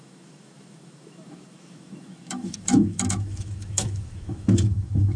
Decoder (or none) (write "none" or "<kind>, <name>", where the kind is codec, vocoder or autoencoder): autoencoder, DAC-VAE